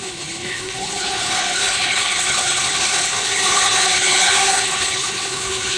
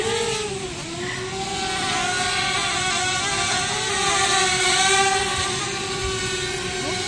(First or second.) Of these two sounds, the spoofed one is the first